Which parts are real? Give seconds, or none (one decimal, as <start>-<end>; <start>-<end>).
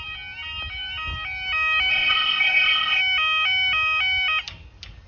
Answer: 0.0-1.9; 3.0-5.1